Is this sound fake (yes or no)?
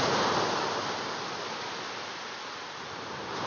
no